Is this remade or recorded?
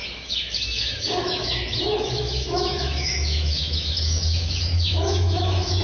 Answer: remade